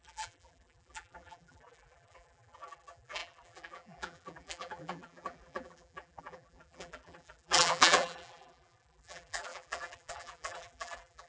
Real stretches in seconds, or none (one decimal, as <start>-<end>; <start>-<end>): none